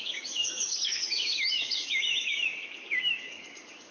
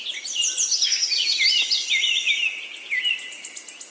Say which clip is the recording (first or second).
second